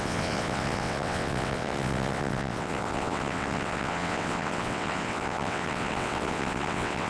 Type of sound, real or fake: fake